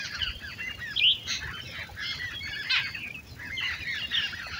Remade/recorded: recorded